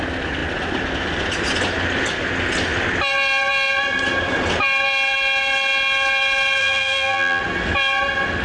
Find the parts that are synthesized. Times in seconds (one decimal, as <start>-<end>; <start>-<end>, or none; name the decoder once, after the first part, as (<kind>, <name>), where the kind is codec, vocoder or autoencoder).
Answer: 6.6-7.4 (vocoder, BigVGAN v2)